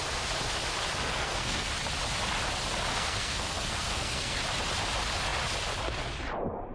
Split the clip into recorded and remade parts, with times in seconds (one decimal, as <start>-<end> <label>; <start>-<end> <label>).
0.0-1.1 recorded; 1.1-1.7 remade; 1.7-2.9 recorded; 2.9-4.4 remade; 4.4-6.7 recorded